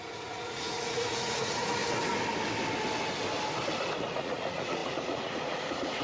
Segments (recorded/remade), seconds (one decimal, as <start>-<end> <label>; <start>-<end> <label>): 0.0-1.8 remade; 1.8-4.0 recorded; 4.0-6.0 remade